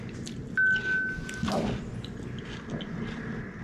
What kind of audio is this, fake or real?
real